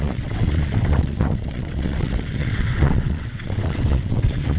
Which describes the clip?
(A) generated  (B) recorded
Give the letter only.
A